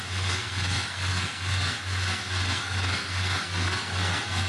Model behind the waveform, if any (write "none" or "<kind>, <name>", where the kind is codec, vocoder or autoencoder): codec, SNAC